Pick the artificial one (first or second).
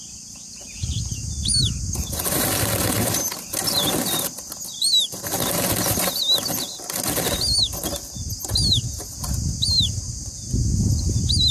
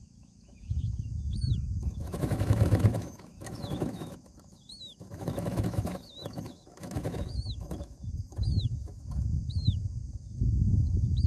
second